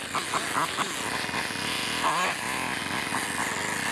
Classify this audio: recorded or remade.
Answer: recorded